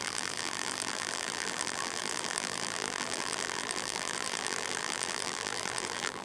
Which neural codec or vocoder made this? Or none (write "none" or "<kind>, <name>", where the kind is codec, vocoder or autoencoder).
vocoder, BigVGAN v2